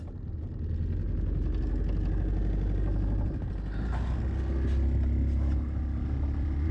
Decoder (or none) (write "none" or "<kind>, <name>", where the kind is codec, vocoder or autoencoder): none